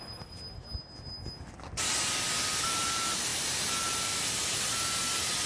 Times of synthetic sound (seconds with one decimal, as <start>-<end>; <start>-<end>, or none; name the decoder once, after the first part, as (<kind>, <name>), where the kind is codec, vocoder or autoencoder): none